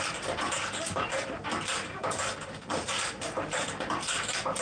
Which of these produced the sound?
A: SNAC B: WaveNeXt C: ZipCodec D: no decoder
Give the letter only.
D